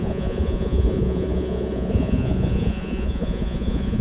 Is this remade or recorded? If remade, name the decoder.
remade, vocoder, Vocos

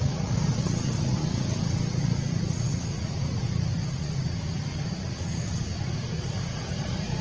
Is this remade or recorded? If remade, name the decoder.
remade, vocoder, Vocos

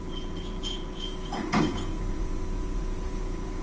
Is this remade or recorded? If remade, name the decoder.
remade, vocoder, Vocos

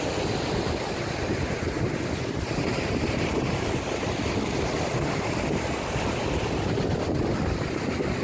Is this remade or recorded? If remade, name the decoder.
recorded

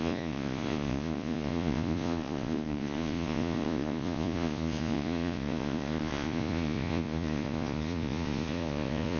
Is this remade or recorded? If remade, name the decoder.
remade, vocoder, Vocos